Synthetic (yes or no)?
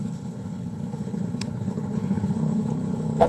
yes